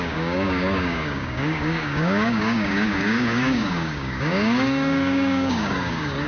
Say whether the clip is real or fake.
fake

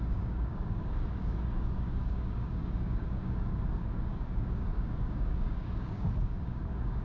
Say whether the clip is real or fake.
fake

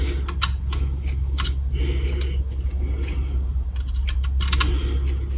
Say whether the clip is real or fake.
real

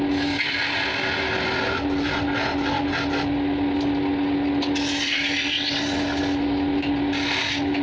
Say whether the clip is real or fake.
real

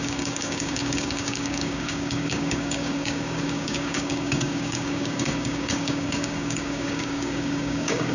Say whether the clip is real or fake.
fake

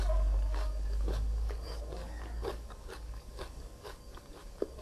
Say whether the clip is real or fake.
fake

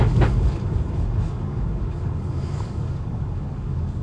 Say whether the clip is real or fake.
fake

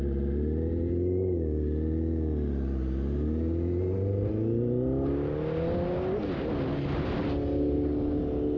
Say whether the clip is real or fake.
real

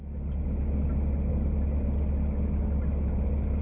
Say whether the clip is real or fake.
real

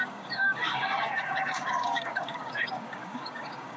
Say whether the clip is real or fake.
fake